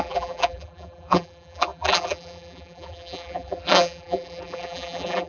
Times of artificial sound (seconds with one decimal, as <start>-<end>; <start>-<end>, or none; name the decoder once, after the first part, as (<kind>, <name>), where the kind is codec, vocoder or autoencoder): 0.0-5.3 (vocoder, BigVGAN v2)